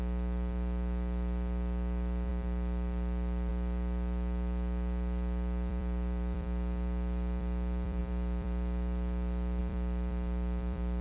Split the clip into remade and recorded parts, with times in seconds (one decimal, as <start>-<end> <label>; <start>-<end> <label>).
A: 0.0-11.0 remade

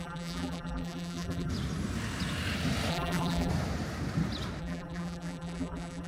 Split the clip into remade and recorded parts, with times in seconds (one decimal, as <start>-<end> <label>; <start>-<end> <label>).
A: 0.0-1.5 remade; 1.5-2.9 recorded; 2.9-3.5 remade; 3.5-4.6 recorded; 4.6-6.1 remade

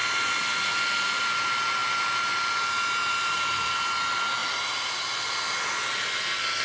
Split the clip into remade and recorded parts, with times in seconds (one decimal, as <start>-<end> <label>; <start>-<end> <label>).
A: 0.0-4.4 recorded; 4.4-5.1 remade; 5.1-6.6 recorded